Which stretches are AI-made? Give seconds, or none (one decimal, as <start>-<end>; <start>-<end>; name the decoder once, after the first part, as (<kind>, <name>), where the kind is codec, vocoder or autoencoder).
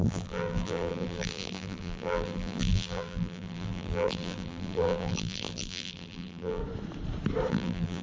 0.0-6.6 (vocoder, BigVGAN v2); 7.5-8.0